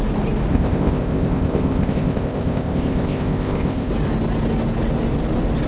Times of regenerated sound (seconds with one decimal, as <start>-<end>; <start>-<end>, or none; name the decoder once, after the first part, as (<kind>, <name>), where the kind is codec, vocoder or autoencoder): 0.5-3.9 (codec, ZipCodec)